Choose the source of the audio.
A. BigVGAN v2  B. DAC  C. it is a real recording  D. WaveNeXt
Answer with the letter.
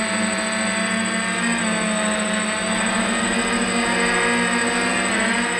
C